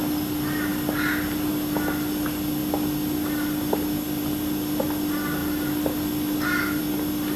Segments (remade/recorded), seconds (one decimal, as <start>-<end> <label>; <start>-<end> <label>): 0.0-7.4 recorded

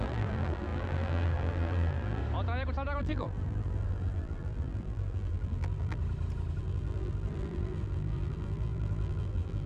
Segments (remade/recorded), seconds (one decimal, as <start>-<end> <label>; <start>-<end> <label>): 0.0-2.2 remade; 2.2-3.0 recorded; 3.0-6.0 remade; 6.0-6.6 recorded; 6.6-9.7 remade

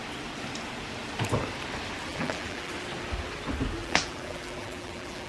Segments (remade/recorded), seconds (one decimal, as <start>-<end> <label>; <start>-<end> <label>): 0.0-2.1 recorded; 2.1-2.7 remade; 2.7-3.8 recorded; 3.8-5.3 remade

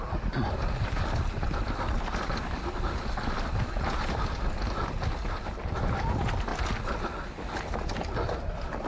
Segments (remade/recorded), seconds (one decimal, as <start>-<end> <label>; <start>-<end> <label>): 0.0-8.9 recorded

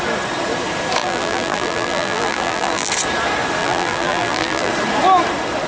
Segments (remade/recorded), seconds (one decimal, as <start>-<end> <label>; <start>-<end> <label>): 0.0-1.0 recorded; 1.0-2.9 remade; 2.9-3.6 recorded; 3.6-4.7 remade; 4.7-5.7 recorded